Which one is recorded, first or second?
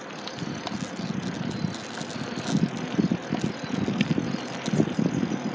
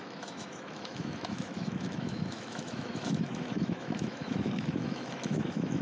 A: first